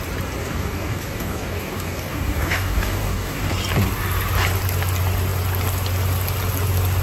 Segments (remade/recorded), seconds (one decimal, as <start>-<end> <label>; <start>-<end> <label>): 0.0-0.4 recorded; 0.4-3.5 remade; 3.5-7.0 recorded